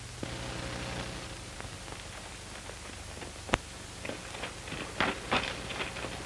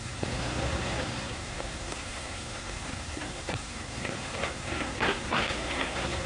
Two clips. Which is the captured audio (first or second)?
first